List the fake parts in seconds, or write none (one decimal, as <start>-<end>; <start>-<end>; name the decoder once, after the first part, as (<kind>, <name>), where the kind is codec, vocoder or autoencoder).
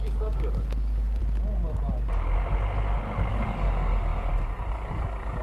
0.0-1.2 (codec, DAC); 3.3-5.4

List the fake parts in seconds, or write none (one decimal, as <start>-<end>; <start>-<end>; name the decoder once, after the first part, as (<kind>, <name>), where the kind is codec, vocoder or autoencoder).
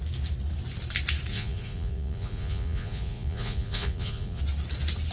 1.3-4.4 (vocoder, Vocos)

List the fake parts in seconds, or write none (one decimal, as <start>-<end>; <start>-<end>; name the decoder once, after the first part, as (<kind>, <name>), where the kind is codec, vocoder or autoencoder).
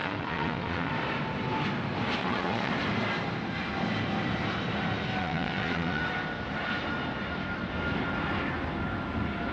0.0-0.9 (vocoder, Vocos); 2.2-2.7; 5.2-6.0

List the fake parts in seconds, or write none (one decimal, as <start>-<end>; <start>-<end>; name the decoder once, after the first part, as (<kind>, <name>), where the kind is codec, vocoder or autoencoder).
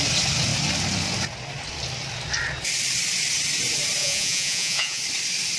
4.0-5.0 (vocoder, Vocos)